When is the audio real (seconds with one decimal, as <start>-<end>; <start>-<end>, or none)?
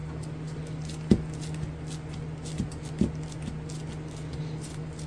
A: 0.0-5.1